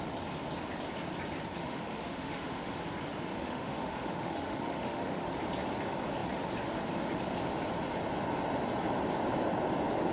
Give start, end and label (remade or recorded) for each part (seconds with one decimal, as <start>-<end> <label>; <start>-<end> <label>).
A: 0.0-1.6 recorded; 1.6-2.8 remade; 2.8-3.3 recorded; 3.3-5.3 remade; 5.3-10.1 recorded